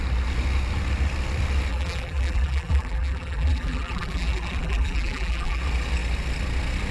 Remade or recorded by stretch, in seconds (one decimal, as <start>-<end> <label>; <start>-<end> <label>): 0.0-1.7 recorded; 1.7-5.6 remade; 5.6-6.9 recorded